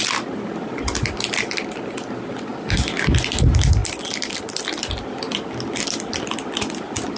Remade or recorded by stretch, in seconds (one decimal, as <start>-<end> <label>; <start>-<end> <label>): 0.0-7.2 recorded